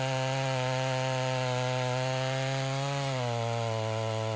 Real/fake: fake